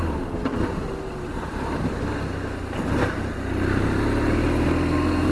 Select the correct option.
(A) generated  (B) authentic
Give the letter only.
B